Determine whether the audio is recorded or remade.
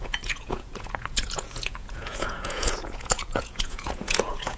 remade